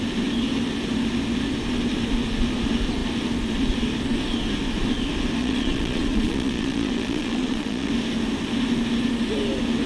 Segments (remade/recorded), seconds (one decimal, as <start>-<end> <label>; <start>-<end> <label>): 0.0-5.4 recorded; 5.4-7.9 remade; 7.9-9.9 recorded